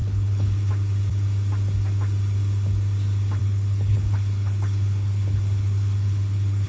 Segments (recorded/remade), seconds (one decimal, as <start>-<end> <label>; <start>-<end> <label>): 0.0-0.7 remade; 0.7-3.4 recorded; 3.4-6.7 remade